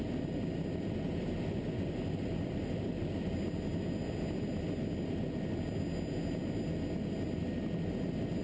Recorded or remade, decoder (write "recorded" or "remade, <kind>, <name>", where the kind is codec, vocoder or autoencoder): recorded